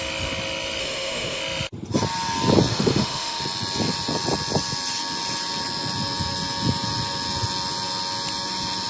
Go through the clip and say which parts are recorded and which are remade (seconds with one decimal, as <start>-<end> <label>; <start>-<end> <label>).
0.0-0.8 recorded; 0.8-1.4 remade; 1.4-2.7 recorded; 2.7-3.4 remade; 3.4-8.9 recorded